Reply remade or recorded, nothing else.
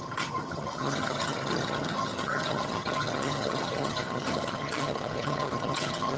remade